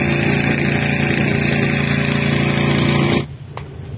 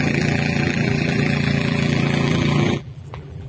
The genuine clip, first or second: first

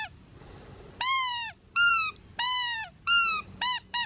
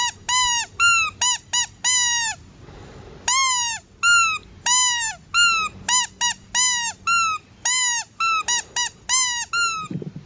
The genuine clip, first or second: second